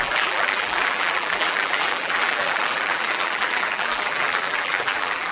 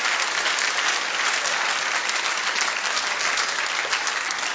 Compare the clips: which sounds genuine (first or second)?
second